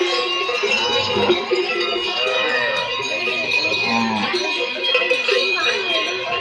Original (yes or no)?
no